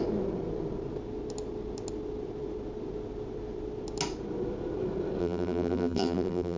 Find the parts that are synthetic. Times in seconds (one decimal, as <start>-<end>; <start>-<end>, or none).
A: 5.2-6.6